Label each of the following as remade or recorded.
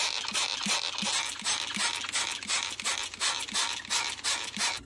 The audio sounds recorded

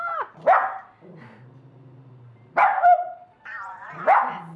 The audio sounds recorded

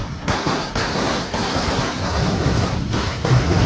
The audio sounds remade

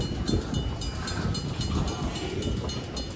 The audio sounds recorded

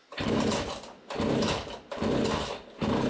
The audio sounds recorded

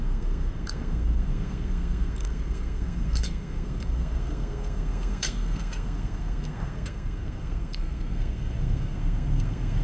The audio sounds remade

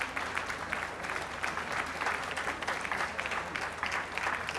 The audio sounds recorded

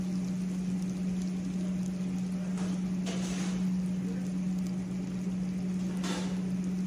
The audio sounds recorded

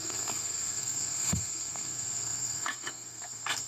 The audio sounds remade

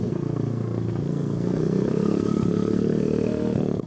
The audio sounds remade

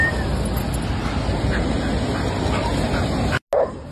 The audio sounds recorded